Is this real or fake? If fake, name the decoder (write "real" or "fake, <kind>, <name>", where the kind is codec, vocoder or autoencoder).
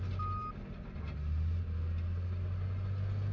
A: real